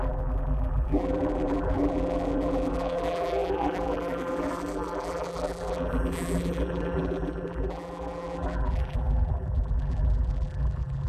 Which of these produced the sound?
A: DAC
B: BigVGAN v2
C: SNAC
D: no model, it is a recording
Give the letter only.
B